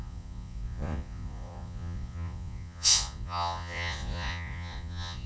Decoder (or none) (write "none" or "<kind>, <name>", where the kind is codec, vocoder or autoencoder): vocoder, Vocos